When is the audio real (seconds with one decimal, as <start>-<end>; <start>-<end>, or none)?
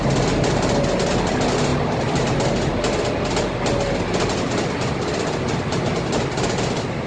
0.0-7.1